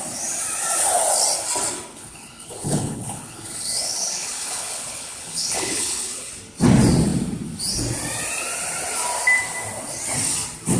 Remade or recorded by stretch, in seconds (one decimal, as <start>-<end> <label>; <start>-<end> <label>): 0.0-1.9 recorded; 1.9-6.3 remade; 6.3-10.8 recorded